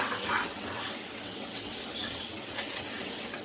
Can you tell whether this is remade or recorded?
remade